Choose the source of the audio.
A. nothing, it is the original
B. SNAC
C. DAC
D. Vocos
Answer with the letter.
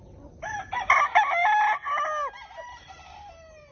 A